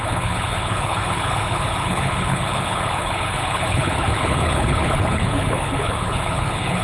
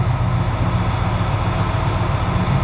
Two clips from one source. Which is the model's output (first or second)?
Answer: first